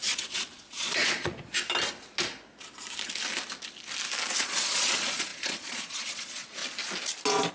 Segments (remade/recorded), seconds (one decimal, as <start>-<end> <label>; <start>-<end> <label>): 0.0-1.5 remade; 1.5-4.4 recorded; 4.4-6.6 remade; 6.6-7.5 recorded